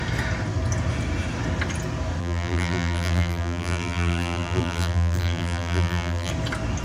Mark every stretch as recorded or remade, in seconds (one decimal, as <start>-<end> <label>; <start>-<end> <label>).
0.0-2.2 recorded; 2.2-6.3 remade; 6.3-6.8 recorded